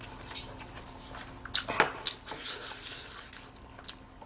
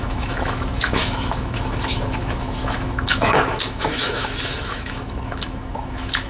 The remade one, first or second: second